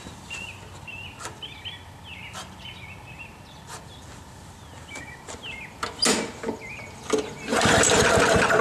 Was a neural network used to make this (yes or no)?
no